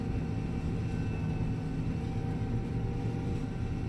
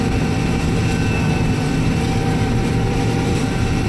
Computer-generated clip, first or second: second